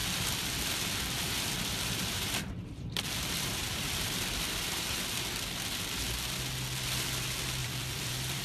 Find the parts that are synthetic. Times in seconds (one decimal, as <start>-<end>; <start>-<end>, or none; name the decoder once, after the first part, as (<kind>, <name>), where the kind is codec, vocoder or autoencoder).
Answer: 0.0-5.0 (vocoder, BigVGAN v2); 7.6-8.4